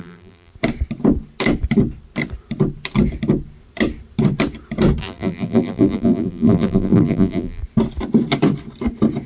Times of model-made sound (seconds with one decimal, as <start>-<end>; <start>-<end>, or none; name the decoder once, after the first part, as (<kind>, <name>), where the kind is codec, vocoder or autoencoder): 0.0-0.5 (vocoder, BigVGAN v2); 5.0-7.6